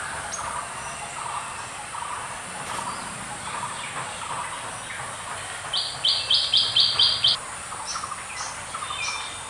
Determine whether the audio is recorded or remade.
recorded